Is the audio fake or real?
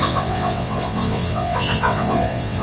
fake